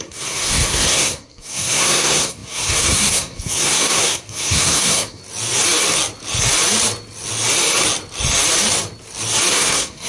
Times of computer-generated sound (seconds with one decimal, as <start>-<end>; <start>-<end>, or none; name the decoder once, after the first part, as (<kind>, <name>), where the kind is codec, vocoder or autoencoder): 0.0-5.2 (codec, SNAC); 9.5-10.1